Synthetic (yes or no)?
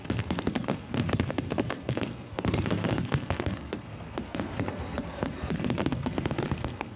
yes